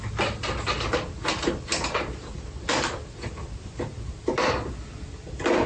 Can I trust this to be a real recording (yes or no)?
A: yes